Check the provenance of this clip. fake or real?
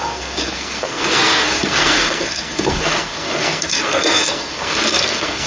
fake